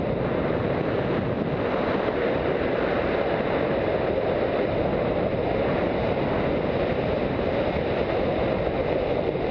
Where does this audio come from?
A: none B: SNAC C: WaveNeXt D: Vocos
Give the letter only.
A